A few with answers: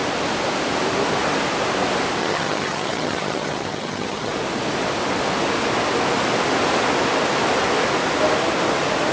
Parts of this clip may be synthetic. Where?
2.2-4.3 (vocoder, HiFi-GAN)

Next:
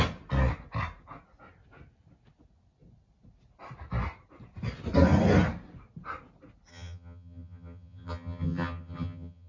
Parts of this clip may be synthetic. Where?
6.7-9.5 (vocoder, HiFi-GAN)

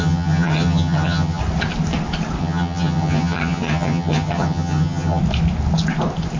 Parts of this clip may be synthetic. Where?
0.0-1.4 (vocoder, HiFi-GAN); 2.4-5.2